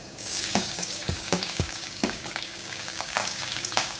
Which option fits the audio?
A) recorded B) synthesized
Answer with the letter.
B